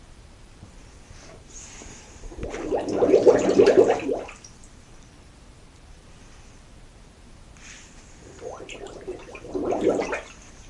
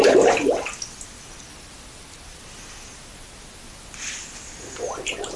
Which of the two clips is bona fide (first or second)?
second